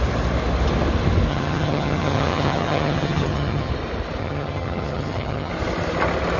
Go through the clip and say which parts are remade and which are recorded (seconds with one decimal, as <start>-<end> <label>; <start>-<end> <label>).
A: 0.0-1.3 recorded; 1.3-3.7 remade; 3.7-4.2 recorded; 4.2-5.5 remade; 5.5-6.4 recorded